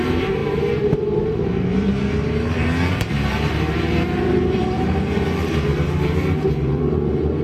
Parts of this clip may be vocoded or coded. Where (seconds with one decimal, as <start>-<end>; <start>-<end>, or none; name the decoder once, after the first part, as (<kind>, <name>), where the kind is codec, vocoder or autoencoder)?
0.0-7.4 (vocoder, BigVGAN v2)